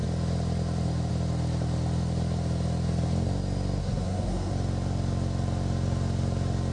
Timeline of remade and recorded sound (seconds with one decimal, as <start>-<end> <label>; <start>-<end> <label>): 0.0-3.8 recorded; 3.8-4.5 remade; 4.5-6.7 recorded